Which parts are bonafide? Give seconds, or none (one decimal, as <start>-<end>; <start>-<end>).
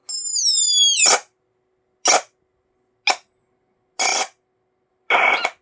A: 0.0-5.6